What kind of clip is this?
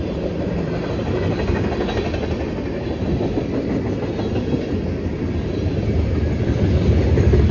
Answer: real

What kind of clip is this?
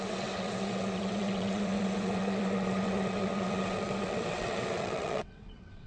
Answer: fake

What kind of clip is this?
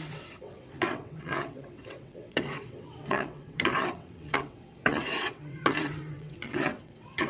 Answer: fake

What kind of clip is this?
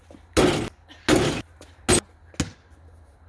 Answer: real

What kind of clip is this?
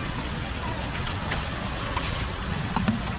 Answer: fake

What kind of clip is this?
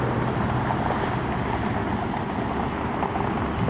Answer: real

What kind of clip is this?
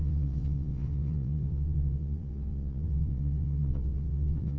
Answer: fake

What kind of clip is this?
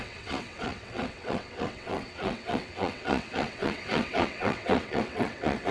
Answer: fake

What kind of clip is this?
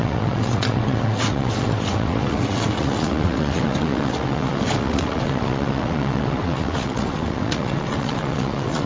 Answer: fake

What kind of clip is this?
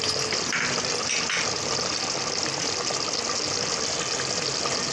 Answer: real